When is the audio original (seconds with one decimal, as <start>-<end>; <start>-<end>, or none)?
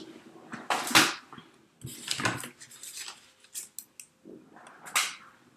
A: 0.0-5.6